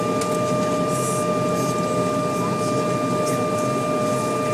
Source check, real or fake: real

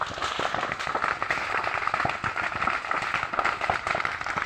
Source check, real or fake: real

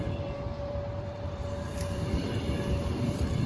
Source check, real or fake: fake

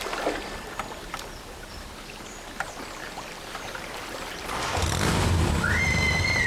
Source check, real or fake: fake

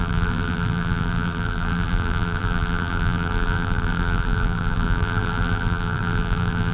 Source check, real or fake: fake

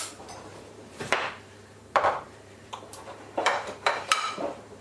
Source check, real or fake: fake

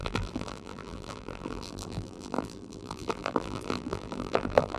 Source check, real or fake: fake